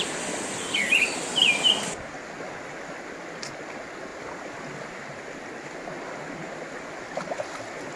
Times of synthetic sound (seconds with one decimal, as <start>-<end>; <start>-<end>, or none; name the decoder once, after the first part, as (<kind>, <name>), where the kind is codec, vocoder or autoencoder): none